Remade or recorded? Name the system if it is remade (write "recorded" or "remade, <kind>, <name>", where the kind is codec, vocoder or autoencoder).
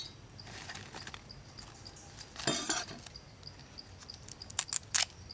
recorded